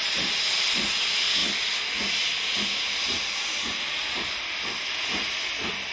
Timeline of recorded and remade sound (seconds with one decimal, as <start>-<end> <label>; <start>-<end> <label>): 0.0-5.9 recorded